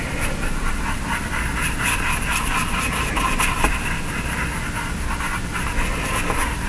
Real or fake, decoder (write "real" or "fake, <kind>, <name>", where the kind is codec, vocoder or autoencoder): real